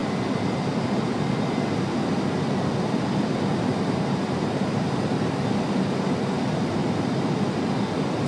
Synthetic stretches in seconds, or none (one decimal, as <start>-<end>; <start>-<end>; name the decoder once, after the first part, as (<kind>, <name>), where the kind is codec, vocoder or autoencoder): 3.7-5.4 (vocoder, BigVGAN v2)